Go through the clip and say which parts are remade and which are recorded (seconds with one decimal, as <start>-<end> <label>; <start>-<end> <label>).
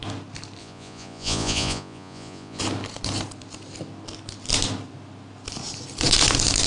0.0-0.6 recorded; 0.6-2.6 remade; 2.6-6.7 recorded